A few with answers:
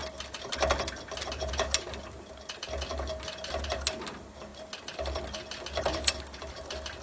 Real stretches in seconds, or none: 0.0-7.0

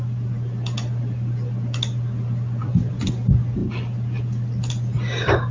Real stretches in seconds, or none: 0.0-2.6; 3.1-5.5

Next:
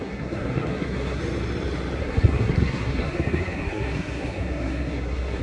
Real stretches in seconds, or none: 1.2-2.0

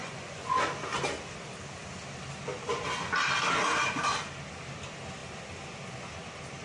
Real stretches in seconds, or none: 0.6-6.6

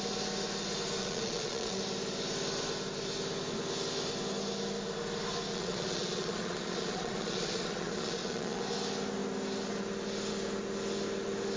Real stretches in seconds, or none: 0.0-1.0; 1.8-5.5; 8.6-11.6

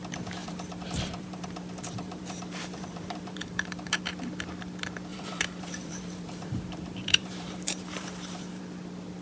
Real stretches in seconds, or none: 0.0-0.4; 4.0-5.1; 8.6-9.2

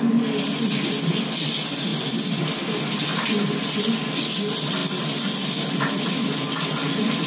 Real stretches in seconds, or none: 0.0-7.3